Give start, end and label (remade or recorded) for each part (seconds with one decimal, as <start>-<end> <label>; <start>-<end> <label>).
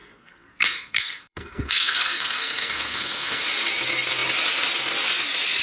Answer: 0.0-3.4 remade; 3.4-5.6 recorded